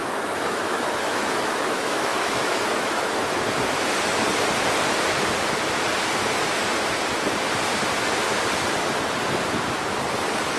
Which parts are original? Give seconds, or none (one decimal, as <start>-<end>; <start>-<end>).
3.4-10.6

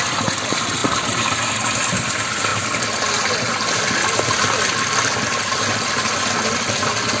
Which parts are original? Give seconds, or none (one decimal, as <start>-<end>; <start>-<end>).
0.0-0.8; 1.5-7.2